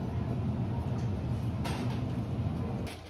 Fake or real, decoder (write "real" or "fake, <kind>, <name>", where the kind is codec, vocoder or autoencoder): real